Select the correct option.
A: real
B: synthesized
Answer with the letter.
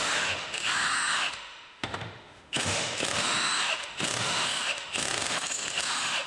B